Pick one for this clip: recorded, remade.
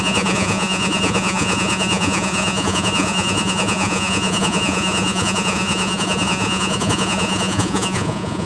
remade